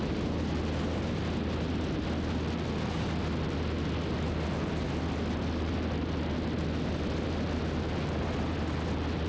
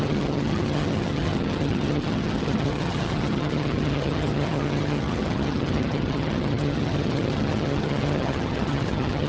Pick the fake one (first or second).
second